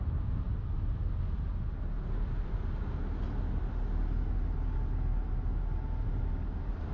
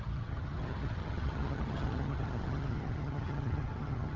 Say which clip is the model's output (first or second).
second